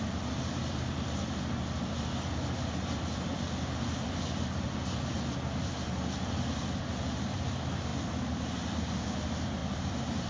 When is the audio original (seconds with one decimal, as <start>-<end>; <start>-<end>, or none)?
5.1-6.2; 7.9-8.8; 9.6-10.3